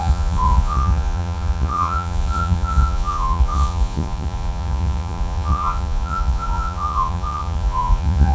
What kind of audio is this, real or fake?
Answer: fake